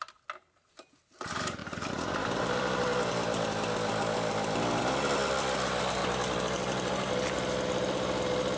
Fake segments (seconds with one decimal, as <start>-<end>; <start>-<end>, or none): none